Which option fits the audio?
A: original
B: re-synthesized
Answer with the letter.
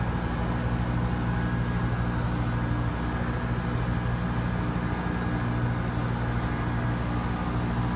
A